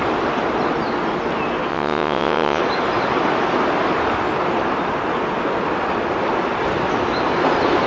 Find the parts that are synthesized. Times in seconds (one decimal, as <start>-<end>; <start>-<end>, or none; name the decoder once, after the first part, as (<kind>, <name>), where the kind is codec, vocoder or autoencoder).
1.7-2.6 (vocoder, WaveNeXt)